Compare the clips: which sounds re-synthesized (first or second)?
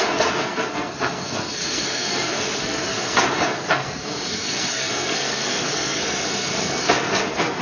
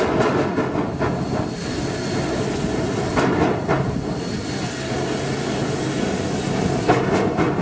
first